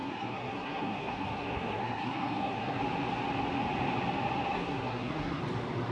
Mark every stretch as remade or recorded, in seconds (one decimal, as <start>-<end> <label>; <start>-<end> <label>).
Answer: 0.0-2.8 remade; 2.8-4.5 recorded; 4.5-5.4 remade; 5.4-5.9 recorded